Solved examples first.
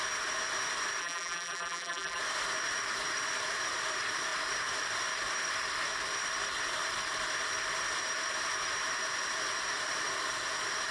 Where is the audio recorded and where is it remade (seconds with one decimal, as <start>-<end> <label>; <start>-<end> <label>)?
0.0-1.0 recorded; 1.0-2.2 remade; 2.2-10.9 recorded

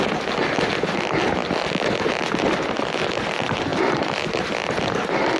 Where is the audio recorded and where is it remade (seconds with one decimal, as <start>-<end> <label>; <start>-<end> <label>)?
0.0-3.7 recorded; 3.7-4.9 remade; 4.9-5.4 recorded

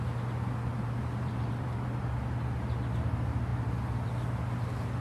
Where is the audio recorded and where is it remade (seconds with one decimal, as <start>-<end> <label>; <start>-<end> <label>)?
0.0-0.7 recorded; 0.7-2.0 remade; 2.0-5.0 recorded

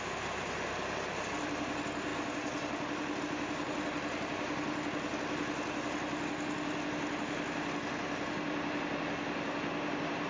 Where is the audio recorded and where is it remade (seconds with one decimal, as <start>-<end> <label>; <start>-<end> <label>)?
0.0-10.3 recorded

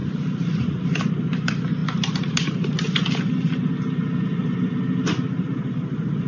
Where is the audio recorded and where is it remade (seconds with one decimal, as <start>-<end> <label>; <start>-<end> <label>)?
0.0-0.8 remade; 0.8-1.8 recorded; 1.8-3.1 remade; 3.1-6.3 recorded

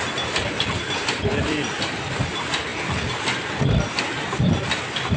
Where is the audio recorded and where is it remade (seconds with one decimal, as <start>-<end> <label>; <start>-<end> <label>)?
0.0-1.3 recorded; 1.3-2.2 remade; 2.2-5.2 recorded

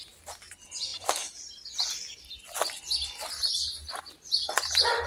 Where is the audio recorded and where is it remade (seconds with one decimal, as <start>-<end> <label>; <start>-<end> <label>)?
0.0-0.9 recorded; 0.9-4.0 remade; 4.0-5.1 recorded